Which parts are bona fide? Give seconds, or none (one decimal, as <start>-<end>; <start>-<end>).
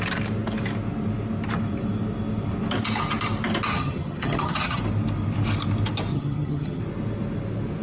0.0-3.7; 4.8-6.1; 6.8-7.8